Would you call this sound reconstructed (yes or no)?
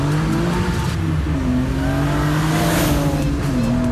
no